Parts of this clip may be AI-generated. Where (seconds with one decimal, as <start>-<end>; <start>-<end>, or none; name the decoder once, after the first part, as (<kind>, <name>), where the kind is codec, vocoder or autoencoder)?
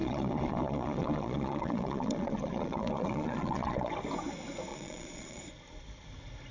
0.0-3.9 (vocoder, Vocos); 4.7-5.4